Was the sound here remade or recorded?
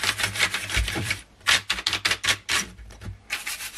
remade